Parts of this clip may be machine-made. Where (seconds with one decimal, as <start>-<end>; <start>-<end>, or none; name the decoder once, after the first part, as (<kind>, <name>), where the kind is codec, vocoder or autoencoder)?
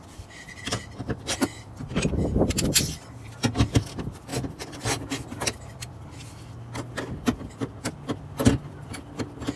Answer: 0.0-4.3 (vocoder, BigVGAN v2); 7.9-9.6